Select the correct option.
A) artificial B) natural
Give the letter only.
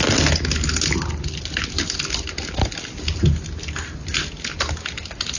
B